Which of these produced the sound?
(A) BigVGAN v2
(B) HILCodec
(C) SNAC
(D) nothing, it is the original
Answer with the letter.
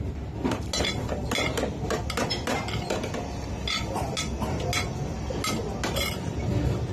D